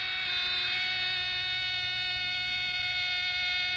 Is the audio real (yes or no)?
yes